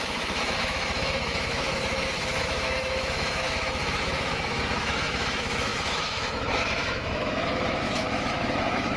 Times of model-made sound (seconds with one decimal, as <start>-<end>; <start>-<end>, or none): 0.0-9.0